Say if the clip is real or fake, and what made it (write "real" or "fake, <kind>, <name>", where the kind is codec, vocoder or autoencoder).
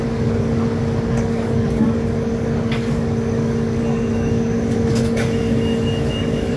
fake, codec, DAC